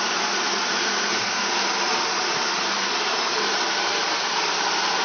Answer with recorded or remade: remade